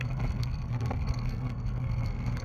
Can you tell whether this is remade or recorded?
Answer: remade